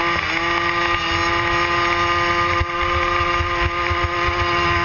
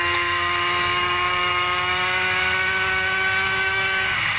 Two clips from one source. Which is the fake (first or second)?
second